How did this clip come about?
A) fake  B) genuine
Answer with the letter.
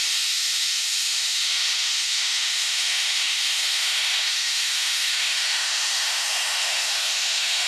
A